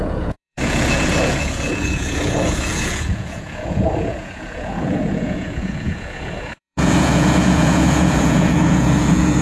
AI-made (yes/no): yes